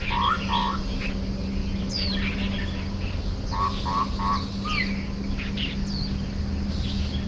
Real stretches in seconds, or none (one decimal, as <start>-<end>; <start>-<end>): 0.0-7.3

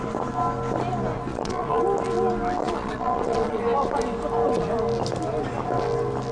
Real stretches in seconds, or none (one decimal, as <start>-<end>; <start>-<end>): 0.0-1.3; 1.8-2.6; 3.6-6.3

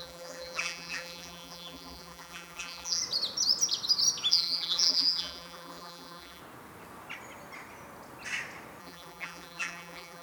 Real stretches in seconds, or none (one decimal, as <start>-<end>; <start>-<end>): 3.0-4.3; 6.4-8.8

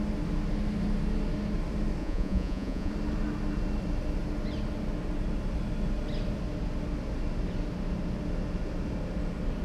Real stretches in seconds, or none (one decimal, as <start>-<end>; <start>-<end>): 0.0-2.0; 2.9-9.6

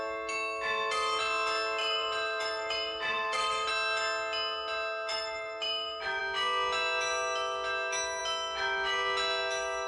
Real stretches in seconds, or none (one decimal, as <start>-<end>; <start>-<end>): 0.0-1.8; 3.7-5.1; 6.2-9.9

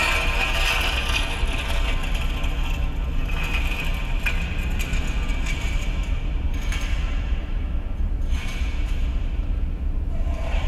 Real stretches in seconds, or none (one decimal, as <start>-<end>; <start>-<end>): 0.0-5.3